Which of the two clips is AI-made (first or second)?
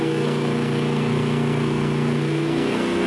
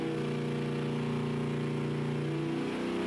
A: first